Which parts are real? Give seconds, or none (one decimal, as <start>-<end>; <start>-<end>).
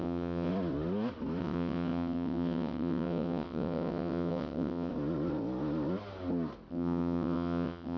0.5-1.4; 4.9-6.7